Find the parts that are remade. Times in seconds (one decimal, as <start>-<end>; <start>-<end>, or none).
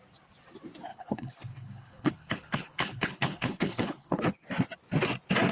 0.9-4.2